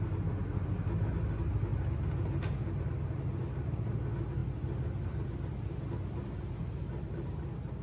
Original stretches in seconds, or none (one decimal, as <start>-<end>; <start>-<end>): 0.0-7.8